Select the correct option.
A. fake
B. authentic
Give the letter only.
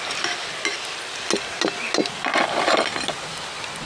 B